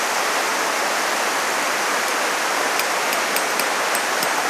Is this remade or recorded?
recorded